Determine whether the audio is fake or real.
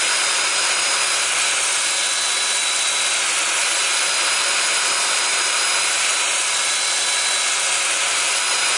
real